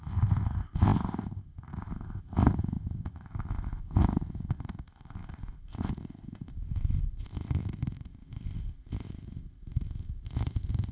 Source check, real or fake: fake